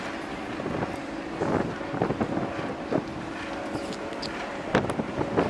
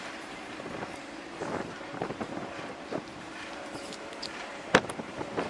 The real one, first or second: first